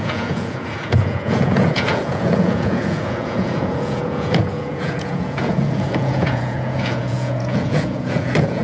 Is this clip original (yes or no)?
no